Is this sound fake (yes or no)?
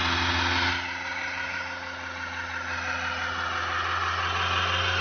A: no